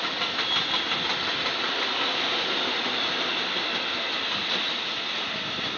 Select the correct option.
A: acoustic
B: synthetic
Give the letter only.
A